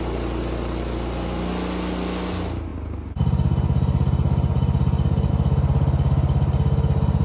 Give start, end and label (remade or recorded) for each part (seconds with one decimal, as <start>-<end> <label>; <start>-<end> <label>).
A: 0.0-7.2 recorded